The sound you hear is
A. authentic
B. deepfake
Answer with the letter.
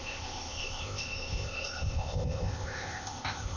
B